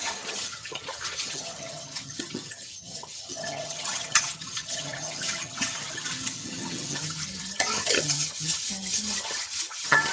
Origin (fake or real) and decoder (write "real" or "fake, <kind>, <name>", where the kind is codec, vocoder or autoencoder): fake, vocoder, HiFi-GAN